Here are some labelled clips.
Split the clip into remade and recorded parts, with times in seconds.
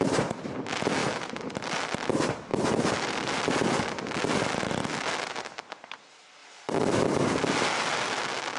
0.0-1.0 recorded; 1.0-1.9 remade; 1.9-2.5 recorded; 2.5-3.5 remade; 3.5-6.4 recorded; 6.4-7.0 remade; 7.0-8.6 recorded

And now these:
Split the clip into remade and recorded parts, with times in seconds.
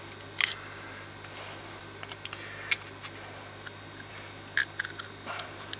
0.0-5.8 recorded